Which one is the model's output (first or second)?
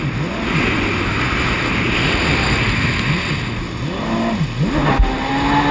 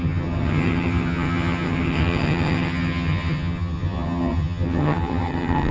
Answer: second